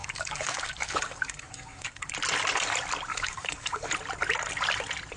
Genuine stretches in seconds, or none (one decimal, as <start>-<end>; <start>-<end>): 2.1-3.1; 3.9-5.2